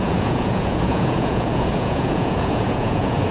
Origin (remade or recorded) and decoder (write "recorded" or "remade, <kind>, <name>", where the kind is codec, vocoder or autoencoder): remade, vocoder, Vocos